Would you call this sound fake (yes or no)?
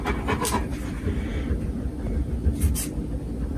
no